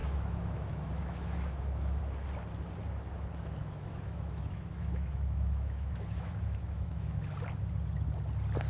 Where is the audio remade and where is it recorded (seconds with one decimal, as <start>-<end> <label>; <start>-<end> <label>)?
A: 0.0-2.0 remade; 2.0-3.6 recorded; 3.6-7.3 remade; 7.3-8.7 recorded